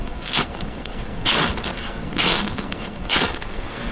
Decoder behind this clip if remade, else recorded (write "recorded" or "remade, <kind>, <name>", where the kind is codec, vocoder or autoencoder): remade, codec, SNAC